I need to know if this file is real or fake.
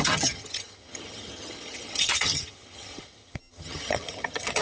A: fake